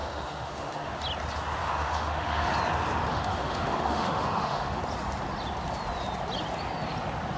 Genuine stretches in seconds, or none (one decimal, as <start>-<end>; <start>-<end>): 0.9-1.6; 2.5-3.1; 4.8-7.4